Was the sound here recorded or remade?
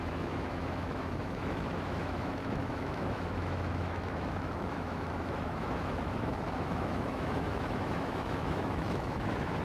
remade